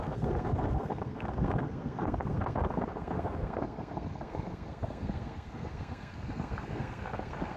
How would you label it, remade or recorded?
remade